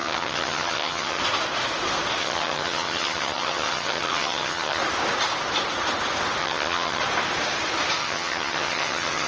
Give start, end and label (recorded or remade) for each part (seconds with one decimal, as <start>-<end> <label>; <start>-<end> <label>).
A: 0.0-1.2 remade; 1.2-2.2 recorded; 2.2-4.8 remade; 4.8-6.4 recorded; 6.4-7.0 remade; 7.0-8.0 recorded; 8.0-9.3 remade